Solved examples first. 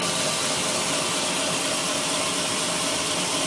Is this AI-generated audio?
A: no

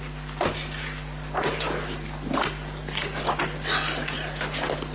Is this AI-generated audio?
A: no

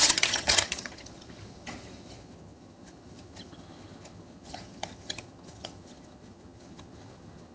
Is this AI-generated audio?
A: yes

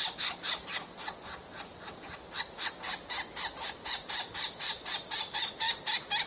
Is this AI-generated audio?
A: no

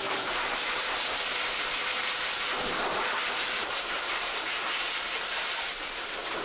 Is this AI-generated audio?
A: yes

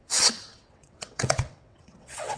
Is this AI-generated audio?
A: yes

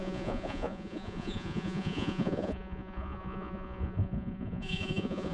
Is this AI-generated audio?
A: yes